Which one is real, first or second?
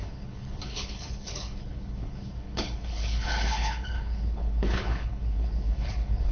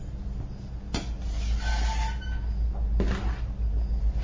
second